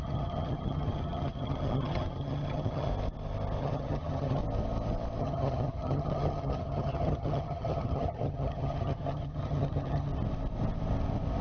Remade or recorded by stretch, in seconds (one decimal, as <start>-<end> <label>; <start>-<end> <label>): 0.0-2.9 remade; 2.9-3.6 recorded; 3.6-4.4 remade; 4.4-5.2 recorded; 5.2-10.1 remade; 10.1-11.4 recorded